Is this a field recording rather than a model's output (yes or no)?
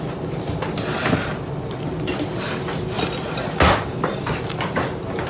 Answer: yes